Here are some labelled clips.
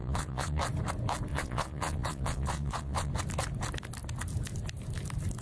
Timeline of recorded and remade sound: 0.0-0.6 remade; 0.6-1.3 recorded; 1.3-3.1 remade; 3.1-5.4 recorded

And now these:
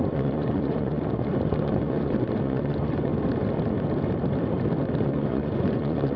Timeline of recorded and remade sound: 0.0-3.1 remade; 3.1-5.0 recorded; 5.0-6.2 remade

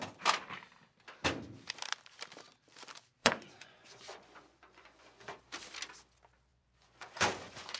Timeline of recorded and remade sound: 0.0-3.2 recorded; 3.2-5.4 remade; 5.4-6.5 recorded; 6.5-7.8 remade

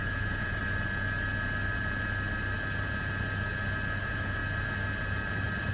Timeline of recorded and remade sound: 0.0-0.6 remade; 0.6-4.0 recorded; 4.0-4.4 remade; 4.4-5.7 recorded

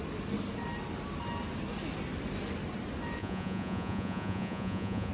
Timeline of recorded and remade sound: 0.0-3.2 recorded; 3.2-5.1 remade